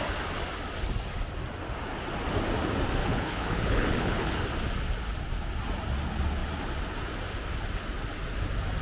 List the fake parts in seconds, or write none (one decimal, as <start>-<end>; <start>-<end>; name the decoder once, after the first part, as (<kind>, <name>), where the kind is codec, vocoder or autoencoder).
3.0-4.4 (codec, HILCodec)